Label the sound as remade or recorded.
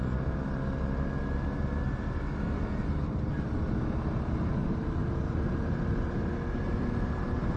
recorded